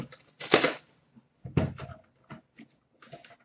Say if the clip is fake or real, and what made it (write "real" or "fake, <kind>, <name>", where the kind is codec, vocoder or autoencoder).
real